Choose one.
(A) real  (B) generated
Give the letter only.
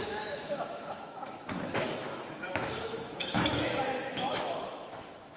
B